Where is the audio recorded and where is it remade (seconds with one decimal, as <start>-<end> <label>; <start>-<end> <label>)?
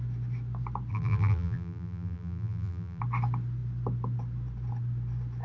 0.0-0.9 recorded; 0.9-3.0 remade; 3.0-5.4 recorded